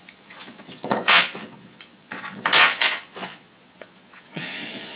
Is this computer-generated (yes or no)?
yes